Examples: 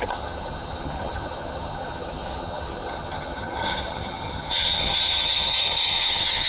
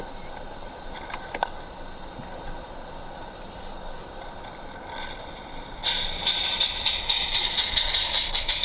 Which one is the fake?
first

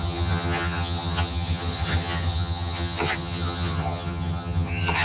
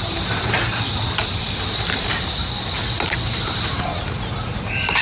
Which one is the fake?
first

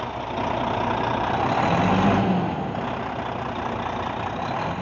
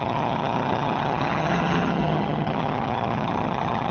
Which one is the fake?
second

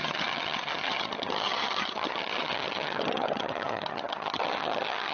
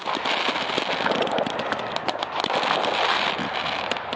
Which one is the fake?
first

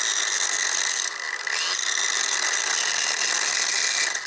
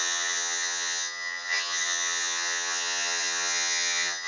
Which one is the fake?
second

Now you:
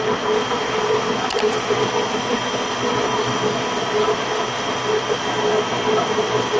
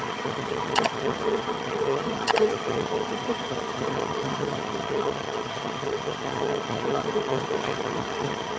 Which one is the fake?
second